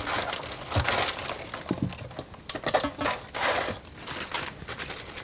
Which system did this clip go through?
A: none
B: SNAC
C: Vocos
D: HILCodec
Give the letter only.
A